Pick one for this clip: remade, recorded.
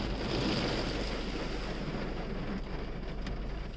recorded